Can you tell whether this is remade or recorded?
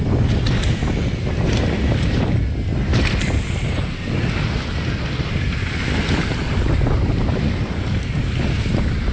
recorded